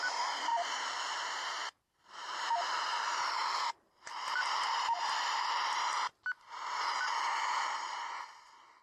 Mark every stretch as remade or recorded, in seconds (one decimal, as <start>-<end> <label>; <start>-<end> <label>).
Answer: 0.0-0.5 recorded; 0.5-1.0 remade; 1.0-1.6 recorded; 1.6-5.8 remade; 5.8-8.8 recorded